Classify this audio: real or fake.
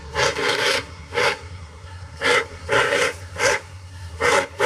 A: fake